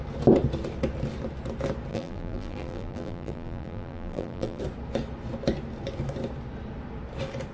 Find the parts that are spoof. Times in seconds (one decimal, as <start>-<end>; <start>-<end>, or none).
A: 1.9-4.6